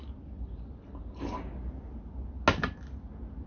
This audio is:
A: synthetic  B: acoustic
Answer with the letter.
B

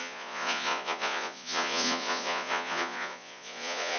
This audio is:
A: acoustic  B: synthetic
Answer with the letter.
B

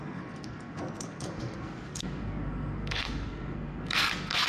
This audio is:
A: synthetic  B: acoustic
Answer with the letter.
A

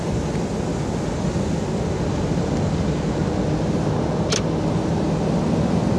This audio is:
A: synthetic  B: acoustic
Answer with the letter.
B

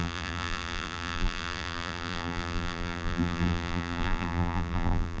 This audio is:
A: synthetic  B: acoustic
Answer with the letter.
A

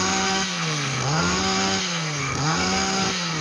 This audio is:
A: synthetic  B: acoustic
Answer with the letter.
A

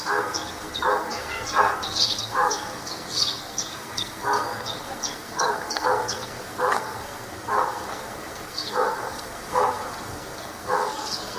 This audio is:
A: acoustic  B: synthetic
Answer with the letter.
B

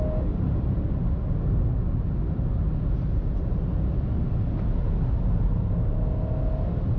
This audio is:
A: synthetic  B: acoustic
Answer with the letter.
B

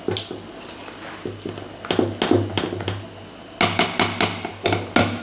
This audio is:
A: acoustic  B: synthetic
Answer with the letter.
A